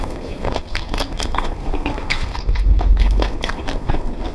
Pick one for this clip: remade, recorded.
remade